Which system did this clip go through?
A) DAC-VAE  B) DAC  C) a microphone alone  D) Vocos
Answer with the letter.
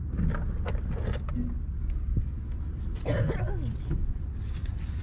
C